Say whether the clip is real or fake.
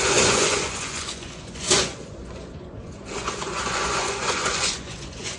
fake